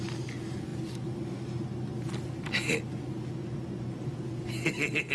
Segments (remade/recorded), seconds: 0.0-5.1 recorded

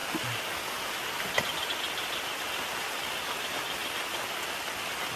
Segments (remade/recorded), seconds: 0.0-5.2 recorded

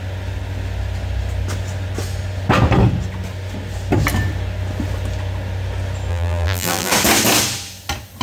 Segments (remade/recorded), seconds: 0.0-6.1 recorded; 6.1-6.9 remade; 6.9-8.2 recorded

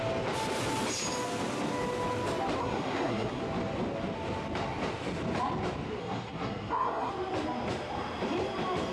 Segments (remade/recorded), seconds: 0.0-2.6 recorded; 2.6-3.4 remade; 3.4-6.0 recorded; 6.0-7.1 remade; 7.1-8.9 recorded

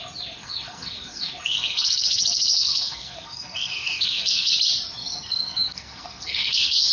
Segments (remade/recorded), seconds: 0.0-0.4 recorded; 0.4-4.5 remade; 4.5-5.0 recorded; 5.0-6.9 remade

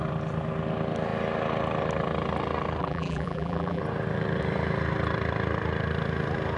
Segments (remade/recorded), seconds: 0.0-2.8 recorded; 2.8-3.8 remade; 3.8-6.6 recorded